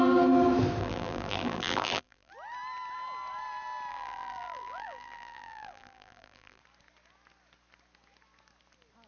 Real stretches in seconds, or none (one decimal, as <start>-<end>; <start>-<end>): 0.0-0.8; 2.3-3.9; 6.6-9.1